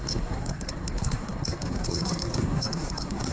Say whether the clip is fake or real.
fake